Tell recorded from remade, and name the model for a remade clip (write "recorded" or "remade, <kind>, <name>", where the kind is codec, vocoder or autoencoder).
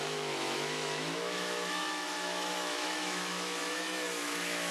remade, autoencoder, DAC-VAE